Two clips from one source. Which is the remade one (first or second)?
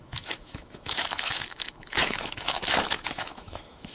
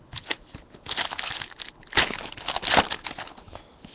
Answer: first